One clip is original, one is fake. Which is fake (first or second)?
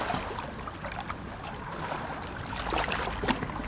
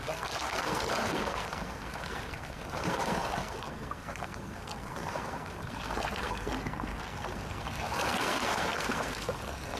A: second